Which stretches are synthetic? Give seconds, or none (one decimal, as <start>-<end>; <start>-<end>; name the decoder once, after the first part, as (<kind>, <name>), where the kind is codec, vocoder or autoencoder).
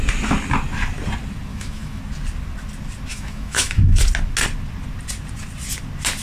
1.5-2.0 (autoencoder, DAC-VAE); 3.1-4.0